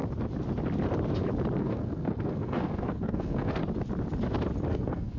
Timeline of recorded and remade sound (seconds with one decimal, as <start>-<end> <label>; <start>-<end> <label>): 0.0-1.6 recorded; 1.6-3.6 remade; 3.6-4.7 recorded; 4.7-5.2 remade

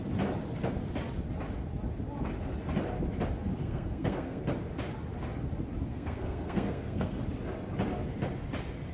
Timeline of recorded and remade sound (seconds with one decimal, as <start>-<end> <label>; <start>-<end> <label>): 0.0-3.6 recorded; 3.6-4.4 remade; 4.4-5.9 recorded; 5.9-7.2 remade; 7.2-8.9 recorded

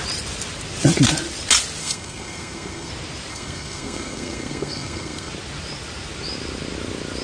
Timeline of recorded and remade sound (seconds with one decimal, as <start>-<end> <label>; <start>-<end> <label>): 0.0-1.8 recorded; 1.8-2.9 remade; 2.9-3.3 recorded; 3.3-5.3 remade; 5.3-7.2 recorded

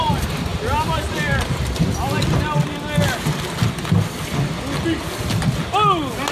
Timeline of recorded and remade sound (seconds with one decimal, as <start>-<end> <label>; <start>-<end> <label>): 0.0-6.3 recorded